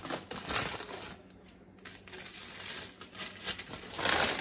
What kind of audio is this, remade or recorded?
recorded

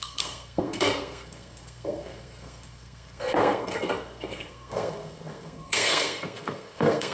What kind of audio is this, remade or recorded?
remade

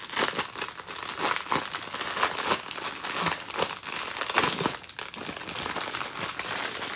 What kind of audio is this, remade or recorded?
recorded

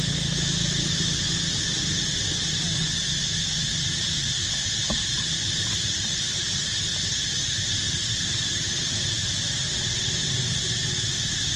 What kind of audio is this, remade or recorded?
recorded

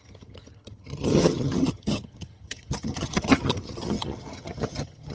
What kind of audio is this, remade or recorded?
remade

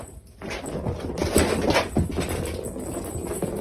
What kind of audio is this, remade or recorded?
recorded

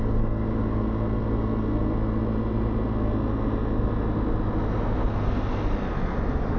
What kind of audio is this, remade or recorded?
recorded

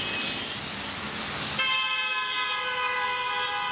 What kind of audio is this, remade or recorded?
recorded